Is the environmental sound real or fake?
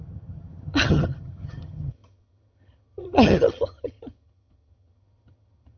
fake